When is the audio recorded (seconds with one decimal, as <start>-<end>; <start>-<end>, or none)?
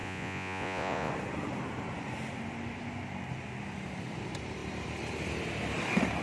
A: 1.1-6.2